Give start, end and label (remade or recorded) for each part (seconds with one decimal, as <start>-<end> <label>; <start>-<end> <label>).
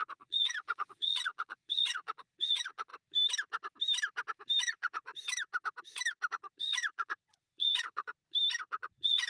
0.0-2.9 remade; 2.9-4.6 recorded; 4.6-5.1 remade; 5.1-6.3 recorded; 6.3-8.1 remade; 8.1-8.6 recorded; 8.6-9.3 remade